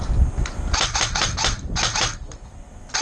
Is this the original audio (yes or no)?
no